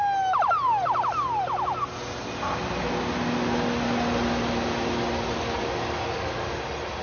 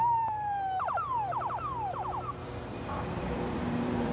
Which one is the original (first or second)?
first